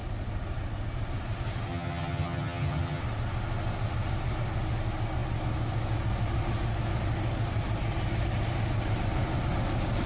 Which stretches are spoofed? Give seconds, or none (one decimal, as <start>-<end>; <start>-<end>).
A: 1.7-3.0